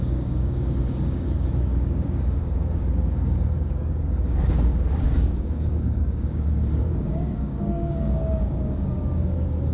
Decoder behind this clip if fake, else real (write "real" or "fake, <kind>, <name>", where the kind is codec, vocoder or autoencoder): fake, codec, DAC